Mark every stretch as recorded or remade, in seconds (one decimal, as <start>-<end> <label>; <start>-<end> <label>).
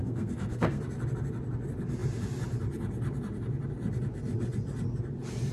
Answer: 0.0-0.8 remade; 0.8-5.5 recorded